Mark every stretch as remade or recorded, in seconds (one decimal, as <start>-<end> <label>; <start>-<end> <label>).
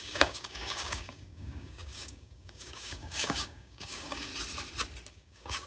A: 0.0-4.3 remade; 4.3-5.1 recorded; 5.1-5.7 remade